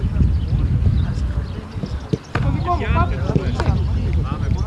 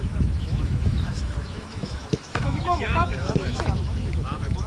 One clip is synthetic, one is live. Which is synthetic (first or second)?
second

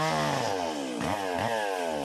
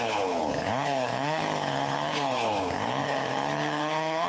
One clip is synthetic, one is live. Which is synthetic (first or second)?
second